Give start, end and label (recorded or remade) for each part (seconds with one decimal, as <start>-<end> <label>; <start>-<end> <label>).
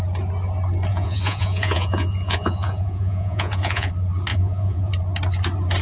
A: 0.0-0.9 recorded; 0.9-3.9 remade; 3.9-4.3 recorded; 4.3-4.9 remade; 4.9-5.8 recorded